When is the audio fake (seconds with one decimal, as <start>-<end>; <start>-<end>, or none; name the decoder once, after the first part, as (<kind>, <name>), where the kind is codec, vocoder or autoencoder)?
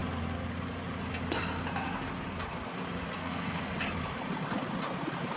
3.2-3.7 (codec, SNAC)